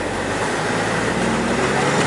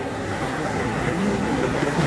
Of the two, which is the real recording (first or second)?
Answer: first